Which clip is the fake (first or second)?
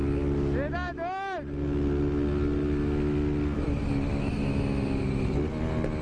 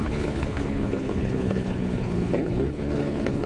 second